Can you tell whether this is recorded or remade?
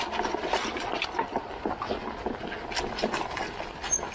recorded